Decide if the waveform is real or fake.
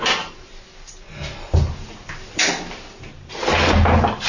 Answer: real